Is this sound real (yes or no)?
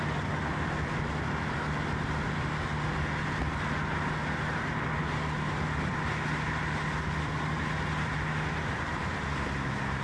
yes